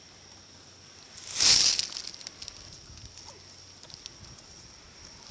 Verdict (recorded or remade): recorded